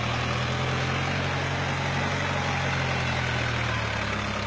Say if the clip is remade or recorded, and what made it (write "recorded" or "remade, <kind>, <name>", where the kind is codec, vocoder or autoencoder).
recorded